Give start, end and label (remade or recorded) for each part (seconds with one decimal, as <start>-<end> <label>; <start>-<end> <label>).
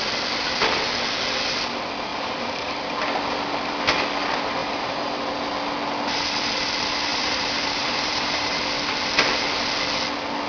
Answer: 0.0-2.1 recorded; 2.1-2.9 remade; 2.9-4.6 recorded; 4.6-5.2 remade; 5.2-7.1 recorded; 7.1-8.6 remade; 8.6-10.5 recorded